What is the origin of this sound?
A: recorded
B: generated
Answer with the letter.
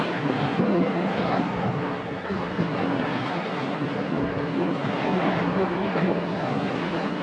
B